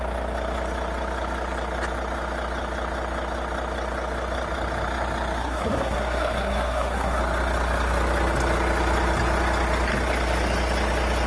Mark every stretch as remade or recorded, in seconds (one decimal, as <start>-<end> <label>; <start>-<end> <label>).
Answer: 0.0-5.4 recorded; 5.4-7.2 remade; 7.2-11.3 recorded